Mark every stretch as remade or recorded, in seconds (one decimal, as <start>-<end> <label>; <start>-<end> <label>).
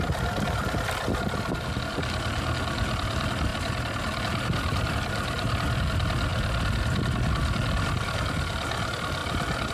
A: 0.0-9.7 recorded